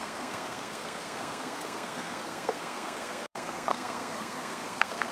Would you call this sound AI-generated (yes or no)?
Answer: yes